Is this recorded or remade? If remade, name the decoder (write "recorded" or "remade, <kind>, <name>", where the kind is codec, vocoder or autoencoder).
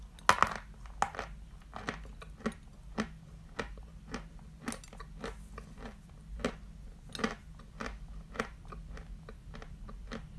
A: recorded